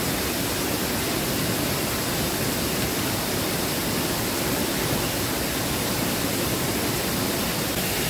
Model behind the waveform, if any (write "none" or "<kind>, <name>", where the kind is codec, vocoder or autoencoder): none